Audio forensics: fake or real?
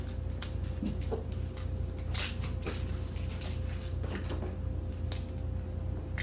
real